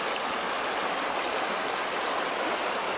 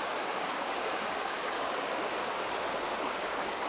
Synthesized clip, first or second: second